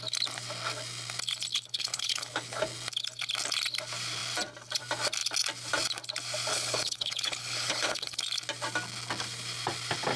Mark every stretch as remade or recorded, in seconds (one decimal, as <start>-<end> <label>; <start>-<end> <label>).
0.0-1.5 recorded; 1.5-2.6 remade; 2.6-6.5 recorded; 6.5-8.2 remade; 8.2-10.2 recorded